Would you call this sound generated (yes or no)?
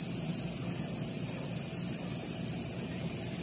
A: no